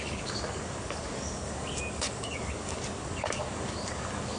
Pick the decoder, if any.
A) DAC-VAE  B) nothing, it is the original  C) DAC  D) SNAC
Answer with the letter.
C